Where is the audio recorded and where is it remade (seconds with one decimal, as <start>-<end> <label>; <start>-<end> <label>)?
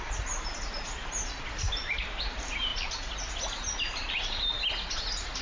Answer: 0.0-5.4 recorded